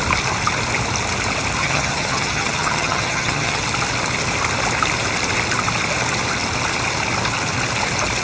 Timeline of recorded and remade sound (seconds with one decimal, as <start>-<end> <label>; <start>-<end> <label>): 0.0-1.6 recorded; 1.6-3.6 remade; 3.6-8.2 recorded